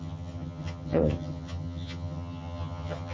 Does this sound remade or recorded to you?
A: remade